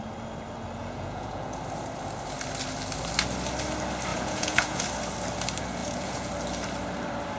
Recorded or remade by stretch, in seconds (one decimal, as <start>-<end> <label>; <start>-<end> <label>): 0.0-0.8 recorded; 0.8-1.6 remade; 1.6-4.1 recorded; 4.1-4.8 remade; 4.8-5.8 recorded; 5.8-6.3 remade; 6.3-7.4 recorded